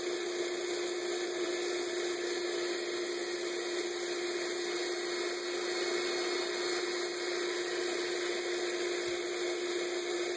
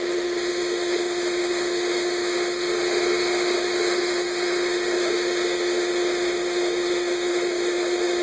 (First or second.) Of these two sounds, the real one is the first